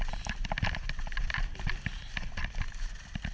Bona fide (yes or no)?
yes